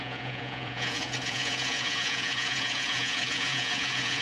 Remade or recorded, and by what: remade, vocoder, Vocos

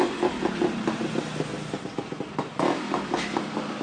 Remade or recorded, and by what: recorded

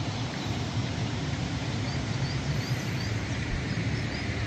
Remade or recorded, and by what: remade, vocoder, BigVGAN v2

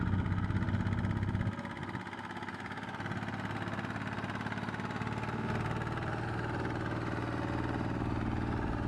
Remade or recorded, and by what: recorded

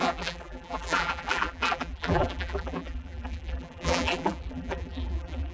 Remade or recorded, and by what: remade, vocoder, BigVGAN v2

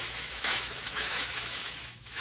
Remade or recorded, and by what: remade, autoencoder, DAC-VAE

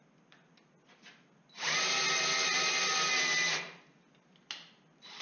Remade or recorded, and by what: recorded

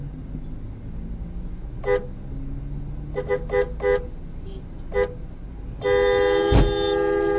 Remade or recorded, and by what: recorded